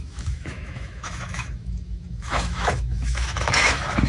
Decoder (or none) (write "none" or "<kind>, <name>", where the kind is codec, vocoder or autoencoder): autoencoder, DAC-VAE